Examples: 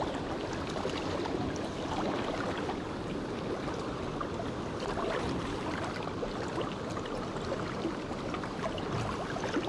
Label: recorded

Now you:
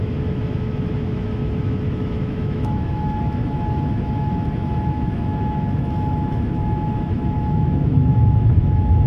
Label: remade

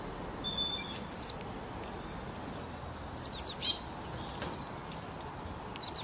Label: recorded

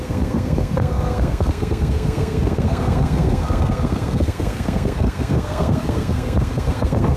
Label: remade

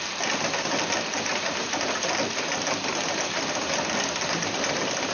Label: recorded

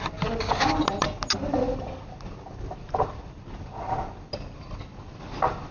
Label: recorded